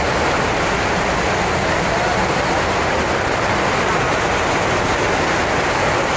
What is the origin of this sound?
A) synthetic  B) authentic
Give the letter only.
B